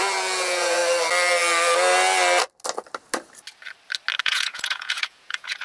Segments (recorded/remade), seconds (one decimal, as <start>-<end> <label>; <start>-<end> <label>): 0.0-0.8 remade; 0.8-4.2 recorded; 4.2-5.6 remade